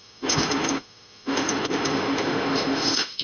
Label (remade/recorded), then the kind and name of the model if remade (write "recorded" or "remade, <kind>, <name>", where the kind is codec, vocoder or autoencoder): remade, autoencoder, DAC-VAE